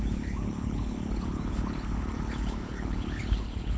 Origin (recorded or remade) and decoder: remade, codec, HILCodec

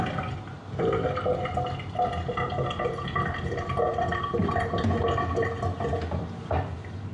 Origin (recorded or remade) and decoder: recorded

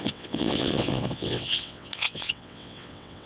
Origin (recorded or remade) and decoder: remade, vocoder, WaveNeXt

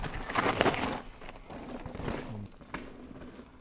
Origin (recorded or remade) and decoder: recorded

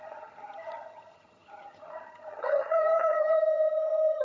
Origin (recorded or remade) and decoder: remade, vocoder, HiFi-GAN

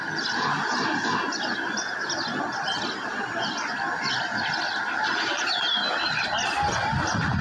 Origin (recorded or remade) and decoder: recorded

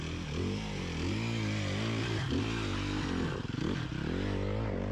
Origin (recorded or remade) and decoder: recorded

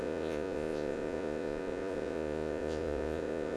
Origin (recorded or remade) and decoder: remade, vocoder, Vocos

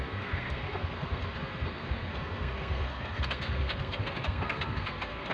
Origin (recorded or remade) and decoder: remade, codec, SNAC